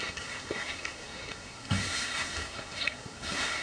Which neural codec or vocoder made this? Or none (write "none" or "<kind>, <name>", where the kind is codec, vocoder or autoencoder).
codec, SNAC